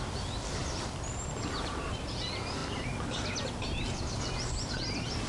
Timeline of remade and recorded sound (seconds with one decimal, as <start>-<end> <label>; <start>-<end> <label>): 0.0-0.6 recorded; 0.6-2.1 remade; 2.1-5.3 recorded